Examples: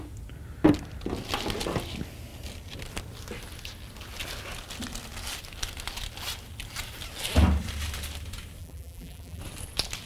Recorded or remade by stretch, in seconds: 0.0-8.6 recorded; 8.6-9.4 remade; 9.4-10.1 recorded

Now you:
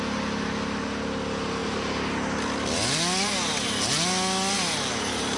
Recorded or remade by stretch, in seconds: 0.0-5.4 recorded

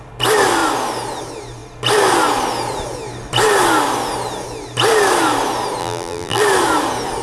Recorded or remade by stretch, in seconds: 0.0-5.8 recorded; 5.8-6.4 remade; 6.4-7.2 recorded

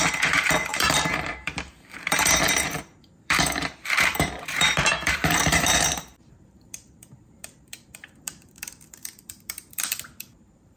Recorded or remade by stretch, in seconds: 0.0-10.8 remade

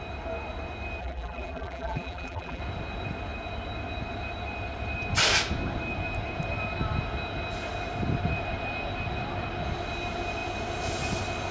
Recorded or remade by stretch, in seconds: 0.0-1.0 recorded; 1.0-2.6 remade; 2.6-11.5 recorded